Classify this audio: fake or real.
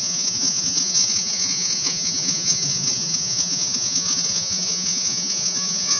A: fake